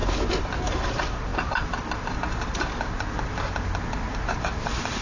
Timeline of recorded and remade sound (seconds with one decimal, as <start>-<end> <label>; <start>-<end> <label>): 0.0-5.0 recorded